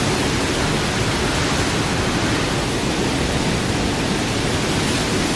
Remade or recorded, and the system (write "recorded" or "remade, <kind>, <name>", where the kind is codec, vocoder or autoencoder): recorded